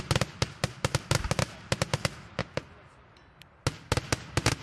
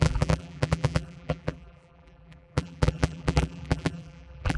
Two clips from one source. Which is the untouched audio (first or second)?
first